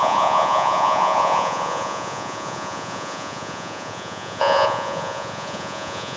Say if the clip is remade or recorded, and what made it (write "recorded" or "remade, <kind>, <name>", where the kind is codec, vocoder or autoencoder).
remade, vocoder, Vocos